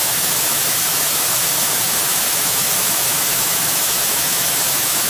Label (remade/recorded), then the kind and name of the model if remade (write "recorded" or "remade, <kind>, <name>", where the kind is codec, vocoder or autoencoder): remade, autoencoder, DAC-VAE